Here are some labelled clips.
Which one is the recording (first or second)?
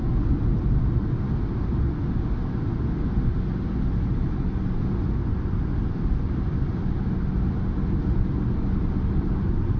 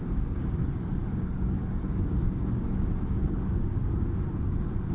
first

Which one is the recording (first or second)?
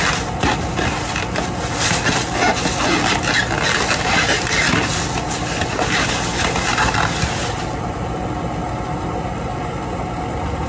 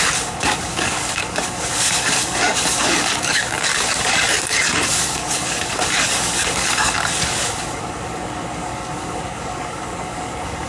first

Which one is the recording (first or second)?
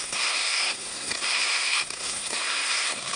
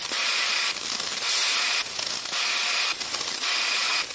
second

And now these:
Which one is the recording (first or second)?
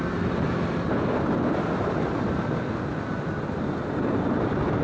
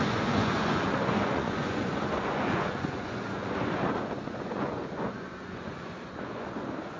first